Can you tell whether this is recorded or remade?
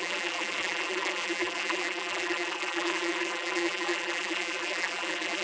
remade